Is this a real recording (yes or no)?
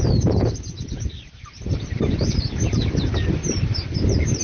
yes